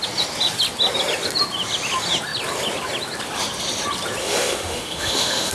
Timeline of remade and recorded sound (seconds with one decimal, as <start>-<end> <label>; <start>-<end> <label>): 0.0-4.2 recorded; 4.2-5.5 remade